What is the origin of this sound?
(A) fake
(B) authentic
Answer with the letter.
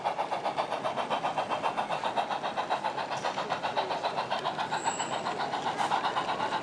B